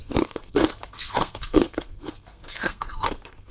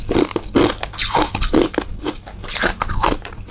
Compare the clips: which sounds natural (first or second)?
second